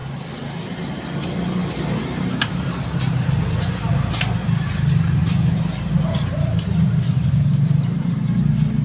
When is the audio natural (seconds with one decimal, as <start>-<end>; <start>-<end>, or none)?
0.0-8.8